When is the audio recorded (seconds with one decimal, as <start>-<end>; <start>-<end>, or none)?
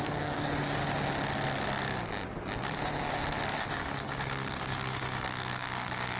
0.8-3.7